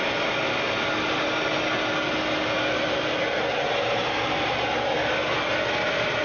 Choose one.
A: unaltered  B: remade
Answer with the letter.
A